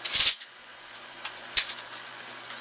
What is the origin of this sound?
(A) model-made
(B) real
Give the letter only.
A